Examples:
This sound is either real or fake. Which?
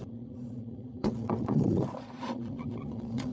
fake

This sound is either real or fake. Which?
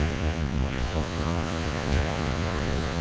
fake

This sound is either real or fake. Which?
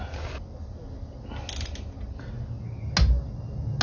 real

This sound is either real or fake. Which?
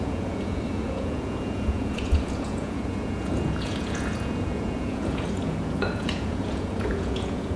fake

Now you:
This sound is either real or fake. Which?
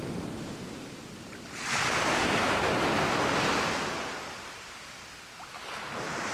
real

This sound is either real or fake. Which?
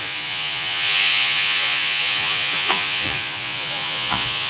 fake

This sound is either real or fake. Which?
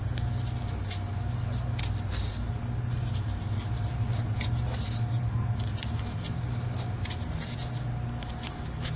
real